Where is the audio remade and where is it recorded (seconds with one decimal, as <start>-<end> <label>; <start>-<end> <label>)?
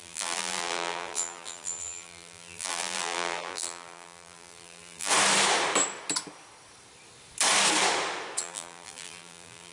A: 0.0-5.1 remade; 5.1-8.4 recorded; 8.4-9.7 remade